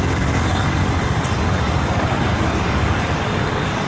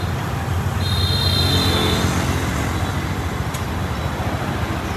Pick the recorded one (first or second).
second